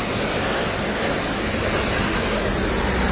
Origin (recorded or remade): recorded